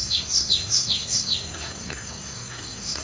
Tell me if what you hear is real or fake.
fake